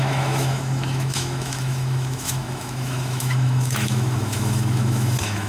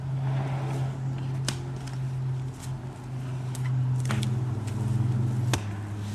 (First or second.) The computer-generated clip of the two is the first